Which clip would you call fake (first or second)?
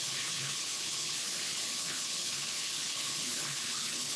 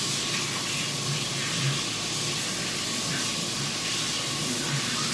first